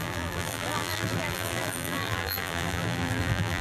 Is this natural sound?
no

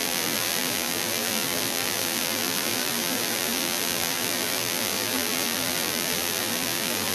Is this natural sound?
no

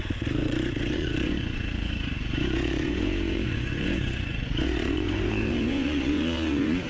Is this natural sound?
no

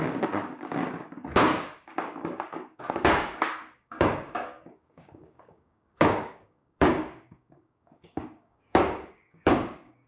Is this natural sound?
no